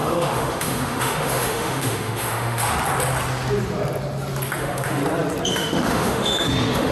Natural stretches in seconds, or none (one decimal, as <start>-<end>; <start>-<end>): 2.7-4.6; 5.0-5.5